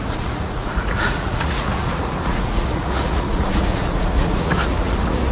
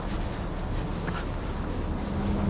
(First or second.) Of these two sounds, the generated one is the first